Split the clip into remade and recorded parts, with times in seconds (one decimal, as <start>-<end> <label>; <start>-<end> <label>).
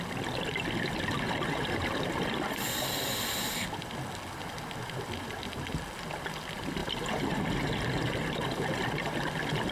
0.0-6.8 recorded; 6.8-7.7 remade; 7.7-9.7 recorded